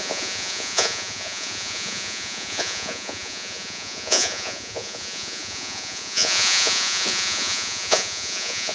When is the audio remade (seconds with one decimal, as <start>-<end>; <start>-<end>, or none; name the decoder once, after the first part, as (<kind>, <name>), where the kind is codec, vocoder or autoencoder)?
0.0-8.7 (vocoder, Vocos)